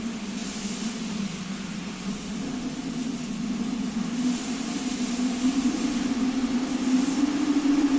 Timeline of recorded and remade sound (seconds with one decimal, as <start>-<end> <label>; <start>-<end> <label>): 0.0-8.0 recorded